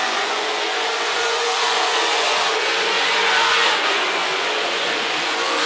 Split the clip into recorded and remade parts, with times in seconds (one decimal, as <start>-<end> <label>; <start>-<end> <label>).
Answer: 0.0-5.7 remade

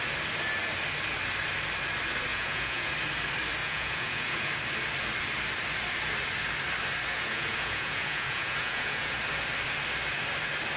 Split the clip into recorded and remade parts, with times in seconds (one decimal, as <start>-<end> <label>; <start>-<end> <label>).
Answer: 0.0-2.3 recorded; 2.3-2.9 remade; 2.9-3.6 recorded; 3.6-4.5 remade; 4.5-7.1 recorded; 7.1-9.2 remade; 9.2-10.8 recorded

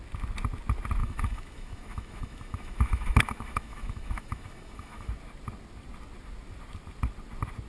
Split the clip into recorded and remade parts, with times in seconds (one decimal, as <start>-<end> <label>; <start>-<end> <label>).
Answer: 0.0-1.0 recorded; 1.0-5.1 remade; 5.1-7.7 recorded

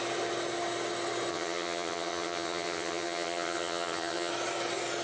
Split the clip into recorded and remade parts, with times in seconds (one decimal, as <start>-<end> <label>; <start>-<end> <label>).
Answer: 0.0-1.3 recorded; 1.3-4.3 remade; 4.3-5.0 recorded

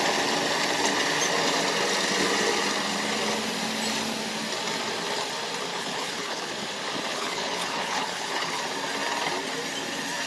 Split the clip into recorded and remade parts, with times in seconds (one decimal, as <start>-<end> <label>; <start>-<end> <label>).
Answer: 0.0-5.7 recorded; 5.7-6.5 remade; 6.5-7.1 recorded; 7.1-8.6 remade; 8.6-10.3 recorded